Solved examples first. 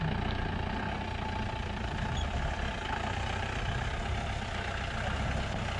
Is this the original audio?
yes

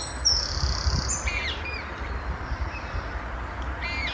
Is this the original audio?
yes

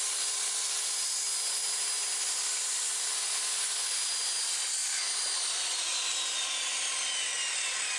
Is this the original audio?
yes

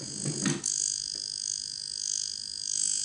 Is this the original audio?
yes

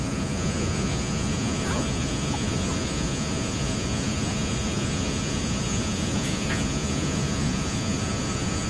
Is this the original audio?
no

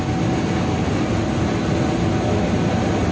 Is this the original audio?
yes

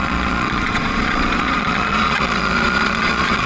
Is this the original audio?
no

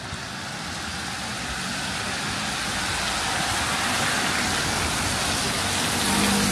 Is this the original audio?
yes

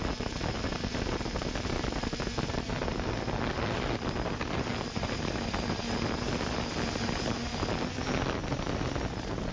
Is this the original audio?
yes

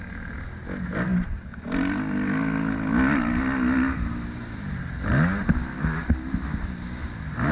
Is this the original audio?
yes